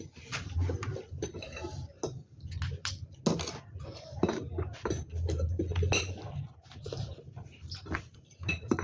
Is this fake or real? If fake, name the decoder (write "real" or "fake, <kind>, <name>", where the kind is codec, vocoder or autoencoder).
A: real